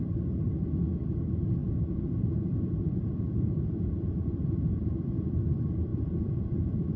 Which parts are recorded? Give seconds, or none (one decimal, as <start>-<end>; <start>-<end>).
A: 0.0-1.6; 5.4-5.9